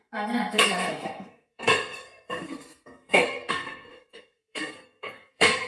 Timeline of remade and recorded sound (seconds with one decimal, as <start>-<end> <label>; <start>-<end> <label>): 0.0-5.7 remade

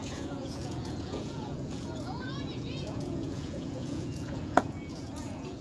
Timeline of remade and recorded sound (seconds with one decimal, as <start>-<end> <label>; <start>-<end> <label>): 0.0-5.6 remade